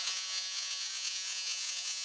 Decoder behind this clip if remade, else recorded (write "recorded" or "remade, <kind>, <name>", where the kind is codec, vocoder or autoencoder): remade, vocoder, Vocos